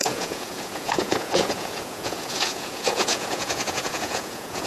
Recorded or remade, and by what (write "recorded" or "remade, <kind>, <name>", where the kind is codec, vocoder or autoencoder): remade, vocoder, Vocos